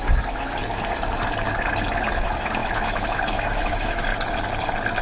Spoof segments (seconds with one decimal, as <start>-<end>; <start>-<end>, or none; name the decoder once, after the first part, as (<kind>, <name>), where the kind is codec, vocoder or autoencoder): 0.0-0.6 (autoencoder, DAC-VAE); 2.1-4.1